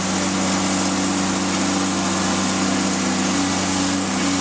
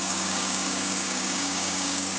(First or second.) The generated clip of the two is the second